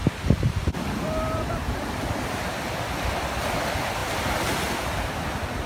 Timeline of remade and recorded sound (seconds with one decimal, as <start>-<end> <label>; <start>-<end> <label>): 0.0-2.5 remade; 2.5-5.7 recorded